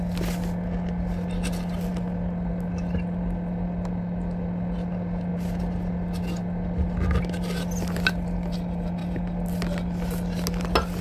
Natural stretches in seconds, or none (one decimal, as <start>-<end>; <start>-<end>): 0.0-11.0